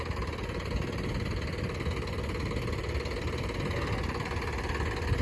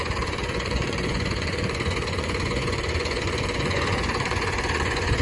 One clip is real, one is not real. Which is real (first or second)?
first